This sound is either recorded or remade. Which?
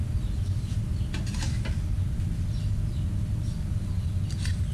recorded